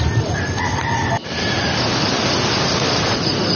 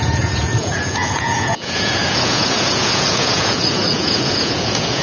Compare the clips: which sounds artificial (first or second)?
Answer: second